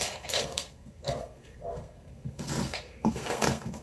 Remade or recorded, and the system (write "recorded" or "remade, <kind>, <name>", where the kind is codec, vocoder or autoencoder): remade, codec, SNAC